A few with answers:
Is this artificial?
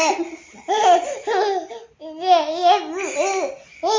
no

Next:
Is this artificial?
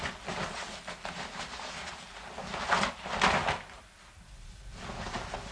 no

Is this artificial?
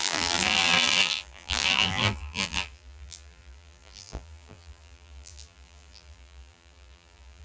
yes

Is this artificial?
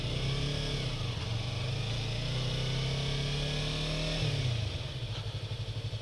no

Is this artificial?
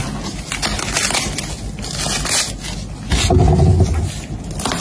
no